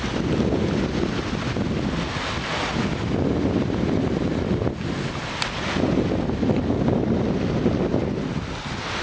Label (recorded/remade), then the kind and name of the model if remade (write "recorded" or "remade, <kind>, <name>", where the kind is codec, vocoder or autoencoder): recorded